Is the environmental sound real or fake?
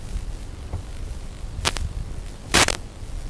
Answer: real